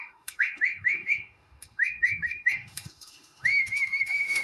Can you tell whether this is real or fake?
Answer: fake